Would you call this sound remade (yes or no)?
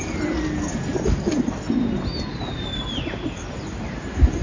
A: no